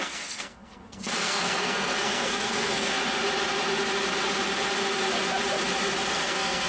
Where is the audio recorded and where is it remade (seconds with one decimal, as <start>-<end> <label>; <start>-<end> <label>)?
0.0-3.0 remade; 3.0-6.1 recorded; 6.1-6.7 remade